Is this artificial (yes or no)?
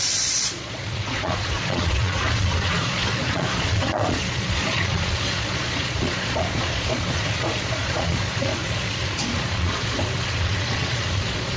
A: yes